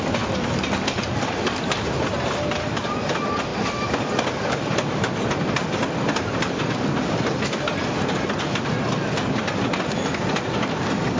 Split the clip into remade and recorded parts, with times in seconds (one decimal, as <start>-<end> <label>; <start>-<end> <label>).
0.0-3.5 recorded; 3.5-5.3 remade; 5.3-11.2 recorded